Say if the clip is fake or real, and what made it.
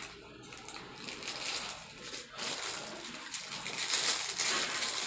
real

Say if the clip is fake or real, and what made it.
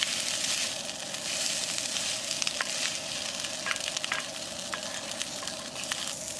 real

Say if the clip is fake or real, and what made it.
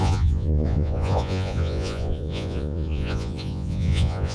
fake, vocoder, Vocos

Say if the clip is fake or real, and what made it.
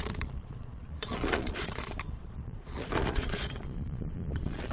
fake, vocoder, Vocos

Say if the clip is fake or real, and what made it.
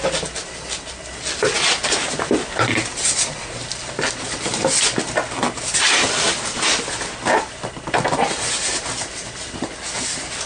real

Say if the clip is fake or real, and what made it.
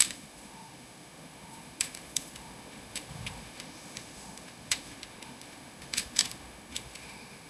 fake, autoencoder, DAC-VAE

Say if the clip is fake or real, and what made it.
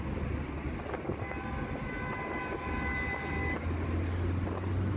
real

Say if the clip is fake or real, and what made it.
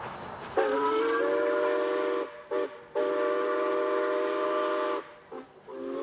real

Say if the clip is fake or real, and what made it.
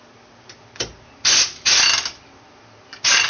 real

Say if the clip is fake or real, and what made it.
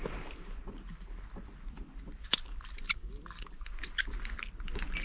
real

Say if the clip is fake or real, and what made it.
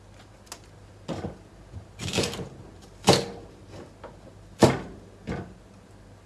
real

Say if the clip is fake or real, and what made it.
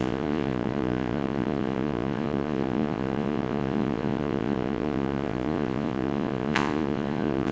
fake, vocoder, Vocos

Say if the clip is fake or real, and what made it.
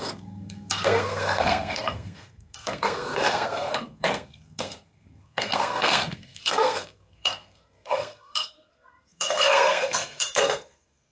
fake, codec, SNAC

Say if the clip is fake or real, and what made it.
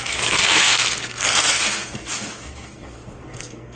fake, codec, SNAC